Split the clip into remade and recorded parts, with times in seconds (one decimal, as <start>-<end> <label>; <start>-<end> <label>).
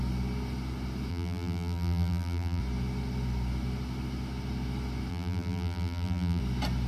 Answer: 0.0-1.1 recorded; 1.1-2.6 remade; 2.6-5.1 recorded; 5.1-6.4 remade; 6.4-6.9 recorded